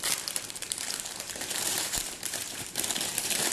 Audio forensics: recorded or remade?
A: remade